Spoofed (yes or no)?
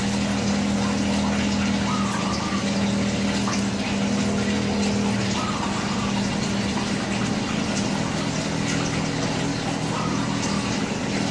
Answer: no